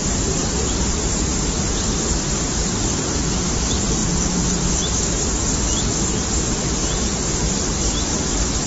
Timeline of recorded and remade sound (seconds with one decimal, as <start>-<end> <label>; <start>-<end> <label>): 0.0-1.7 remade; 1.7-8.7 recorded